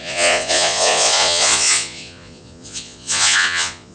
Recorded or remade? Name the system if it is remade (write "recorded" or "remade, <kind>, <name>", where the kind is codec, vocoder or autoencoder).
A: remade, vocoder, Vocos